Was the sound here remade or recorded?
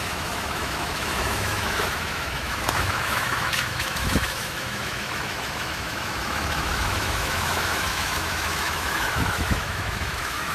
remade